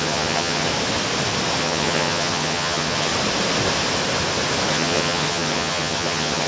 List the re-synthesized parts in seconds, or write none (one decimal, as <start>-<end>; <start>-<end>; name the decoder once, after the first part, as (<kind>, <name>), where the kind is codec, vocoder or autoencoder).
0.0-0.7 (vocoder, HiFi-GAN); 1.6-3.1; 4.7-6.5